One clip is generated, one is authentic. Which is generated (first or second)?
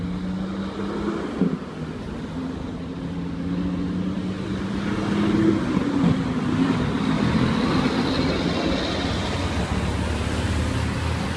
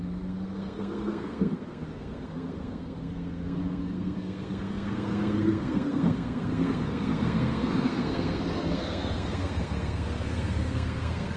second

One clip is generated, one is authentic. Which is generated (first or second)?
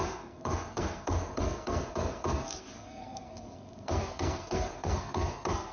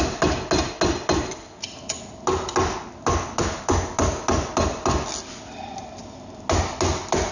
first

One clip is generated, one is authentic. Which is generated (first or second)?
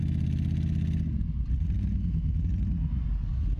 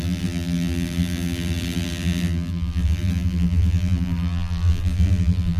second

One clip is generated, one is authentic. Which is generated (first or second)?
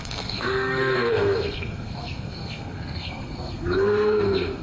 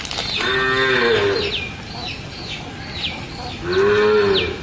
first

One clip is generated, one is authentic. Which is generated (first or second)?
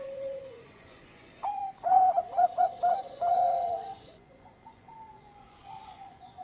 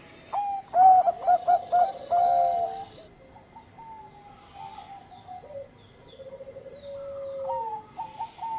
first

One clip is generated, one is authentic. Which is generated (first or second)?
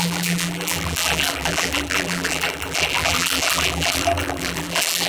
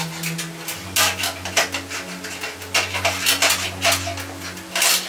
first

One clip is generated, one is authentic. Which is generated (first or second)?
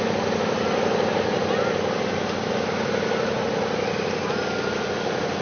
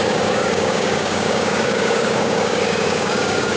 second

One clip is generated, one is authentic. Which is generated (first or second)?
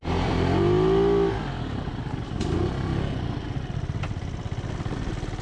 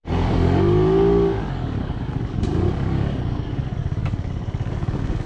second